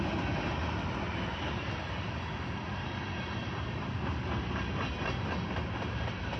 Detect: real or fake real